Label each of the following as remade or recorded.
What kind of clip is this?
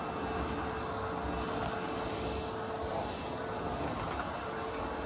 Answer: recorded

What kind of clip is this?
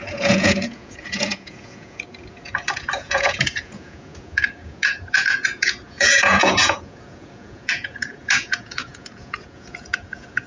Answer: remade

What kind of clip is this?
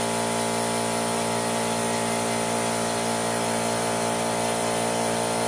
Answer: recorded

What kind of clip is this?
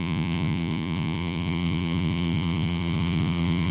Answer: remade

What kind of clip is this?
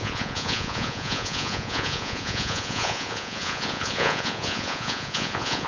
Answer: remade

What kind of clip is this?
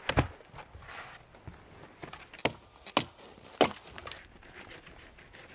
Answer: recorded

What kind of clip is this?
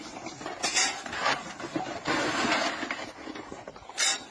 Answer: recorded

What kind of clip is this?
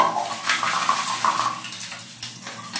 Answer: recorded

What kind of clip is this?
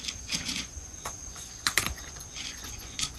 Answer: remade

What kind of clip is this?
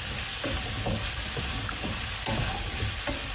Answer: recorded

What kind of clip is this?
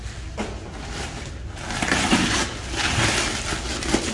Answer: recorded